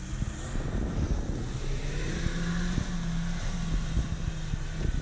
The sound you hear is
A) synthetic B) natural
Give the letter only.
B